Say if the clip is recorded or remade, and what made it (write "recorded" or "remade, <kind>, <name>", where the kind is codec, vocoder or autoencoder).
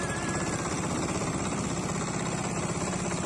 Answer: recorded